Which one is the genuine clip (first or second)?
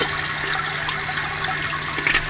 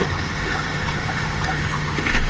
first